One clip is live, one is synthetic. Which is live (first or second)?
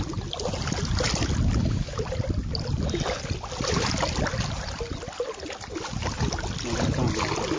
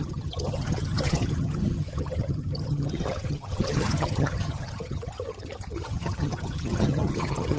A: first